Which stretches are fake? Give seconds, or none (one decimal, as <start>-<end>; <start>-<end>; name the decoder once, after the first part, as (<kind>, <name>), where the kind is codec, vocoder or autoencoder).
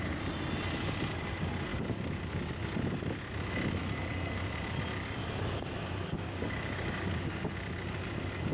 5.2-7.5 (codec, DAC)